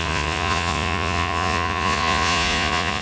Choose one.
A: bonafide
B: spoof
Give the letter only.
B